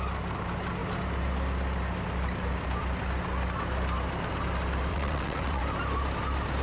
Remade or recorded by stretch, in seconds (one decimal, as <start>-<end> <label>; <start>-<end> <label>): 0.0-4.9 recorded; 4.9-5.6 remade; 5.6-6.6 recorded